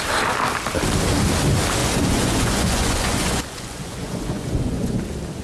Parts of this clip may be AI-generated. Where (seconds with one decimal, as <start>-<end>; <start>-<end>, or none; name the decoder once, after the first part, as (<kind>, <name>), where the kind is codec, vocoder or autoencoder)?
1.8-5.0 (vocoder, Vocos)